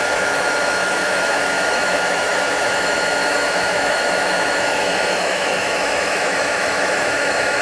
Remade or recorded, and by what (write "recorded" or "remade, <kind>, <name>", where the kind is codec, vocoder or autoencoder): remade, autoencoder, DAC-VAE